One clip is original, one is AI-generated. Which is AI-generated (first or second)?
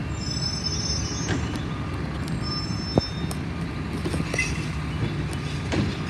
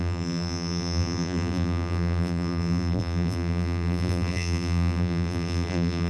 second